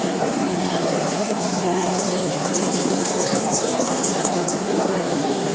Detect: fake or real fake